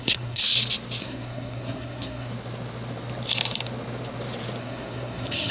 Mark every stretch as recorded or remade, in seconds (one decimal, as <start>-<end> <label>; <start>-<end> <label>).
0.0-0.4 remade; 0.4-1.0 recorded; 1.0-2.3 remade; 2.3-4.6 recorded; 4.6-5.5 remade